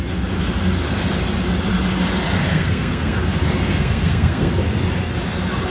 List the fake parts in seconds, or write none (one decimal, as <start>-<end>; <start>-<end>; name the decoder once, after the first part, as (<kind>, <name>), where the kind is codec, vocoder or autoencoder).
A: 2.5-3.2 (codec, SNAC); 3.7-4.5